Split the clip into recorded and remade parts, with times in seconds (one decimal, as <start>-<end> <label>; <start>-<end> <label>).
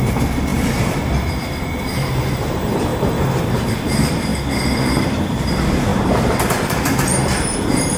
0.0-4.3 remade; 4.3-5.0 recorded; 5.0-8.0 remade